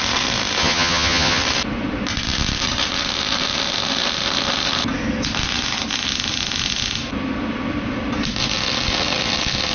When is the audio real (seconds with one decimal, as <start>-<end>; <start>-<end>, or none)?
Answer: 0.0-0.6; 1.4-9.7